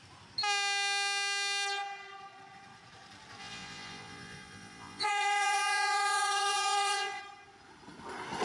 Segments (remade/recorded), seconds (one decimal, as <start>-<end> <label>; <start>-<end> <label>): 0.0-3.4 recorded; 3.4-7.2 remade; 7.2-8.4 recorded